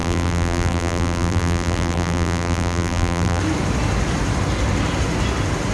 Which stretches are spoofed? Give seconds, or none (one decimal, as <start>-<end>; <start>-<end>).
0.0-3.4